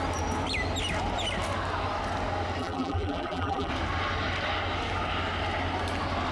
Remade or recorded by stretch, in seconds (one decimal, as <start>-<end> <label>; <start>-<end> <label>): 0.0-2.6 recorded; 2.6-3.7 remade; 3.7-6.3 recorded